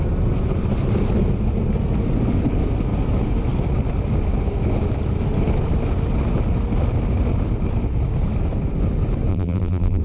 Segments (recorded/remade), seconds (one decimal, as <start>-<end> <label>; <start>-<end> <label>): 0.0-9.3 recorded; 9.3-10.0 remade